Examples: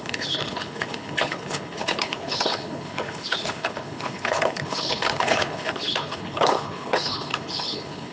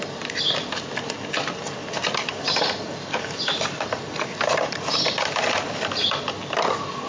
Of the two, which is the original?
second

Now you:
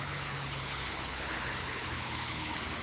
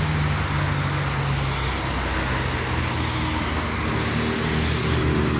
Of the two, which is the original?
second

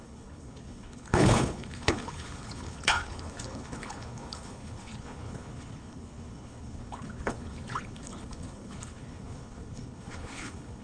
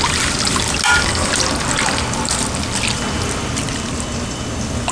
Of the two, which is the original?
second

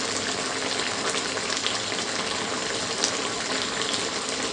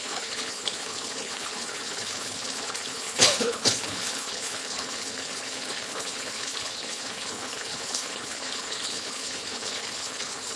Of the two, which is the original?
first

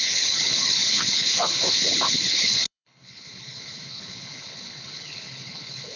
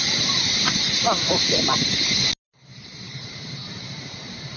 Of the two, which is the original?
second